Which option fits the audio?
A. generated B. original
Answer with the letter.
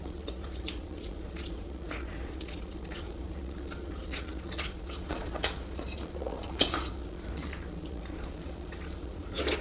A